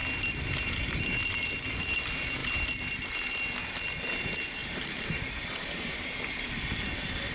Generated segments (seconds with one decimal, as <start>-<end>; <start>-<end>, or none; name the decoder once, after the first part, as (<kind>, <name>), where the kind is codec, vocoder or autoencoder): 4.6-5.9 (vocoder, BigVGAN v2)